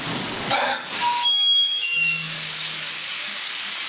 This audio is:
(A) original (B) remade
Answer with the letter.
B